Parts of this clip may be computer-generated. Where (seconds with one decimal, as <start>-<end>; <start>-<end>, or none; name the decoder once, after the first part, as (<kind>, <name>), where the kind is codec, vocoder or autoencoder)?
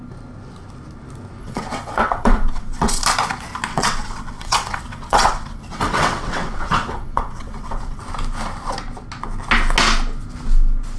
1.4-3.0 (vocoder, WaveNeXt); 3.7-8.0